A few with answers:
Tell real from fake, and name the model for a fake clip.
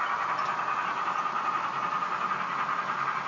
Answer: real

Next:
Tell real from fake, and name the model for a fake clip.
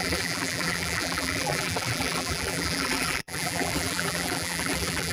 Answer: fake, vocoder, BigVGAN v2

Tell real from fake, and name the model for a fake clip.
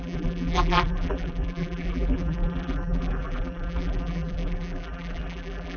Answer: fake, vocoder, BigVGAN v2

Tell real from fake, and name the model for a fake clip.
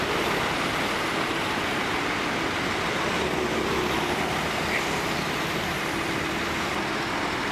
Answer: fake, vocoder, BigVGAN v2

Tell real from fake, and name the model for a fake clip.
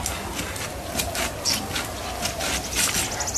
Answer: real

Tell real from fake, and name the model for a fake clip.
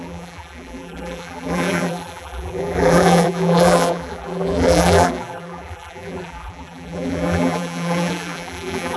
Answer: fake, vocoder, BigVGAN v2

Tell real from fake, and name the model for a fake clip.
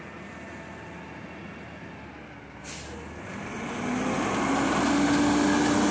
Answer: real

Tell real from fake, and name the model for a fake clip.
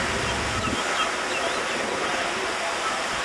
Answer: real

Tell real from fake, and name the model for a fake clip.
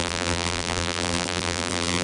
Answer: fake, vocoder, BigVGAN v2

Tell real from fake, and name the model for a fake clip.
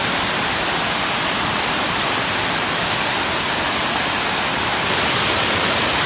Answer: real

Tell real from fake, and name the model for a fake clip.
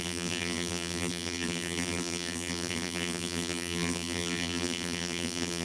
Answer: fake, vocoder, BigVGAN v2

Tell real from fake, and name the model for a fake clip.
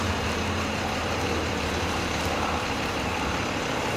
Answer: fake, vocoder, BigVGAN v2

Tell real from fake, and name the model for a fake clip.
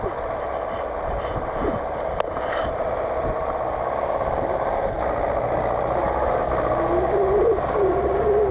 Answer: real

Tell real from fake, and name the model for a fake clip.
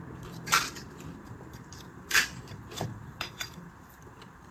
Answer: fake, vocoder, BigVGAN v2